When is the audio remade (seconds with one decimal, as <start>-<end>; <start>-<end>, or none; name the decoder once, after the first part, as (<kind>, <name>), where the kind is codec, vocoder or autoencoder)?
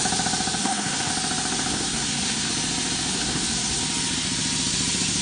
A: 0.6-1.1 (codec, SNAC); 1.7-2.5; 3.1-3.8